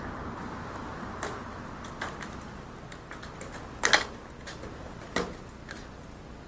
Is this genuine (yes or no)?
yes